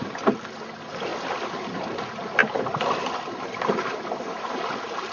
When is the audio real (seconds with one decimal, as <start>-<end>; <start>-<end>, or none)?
0.0-5.1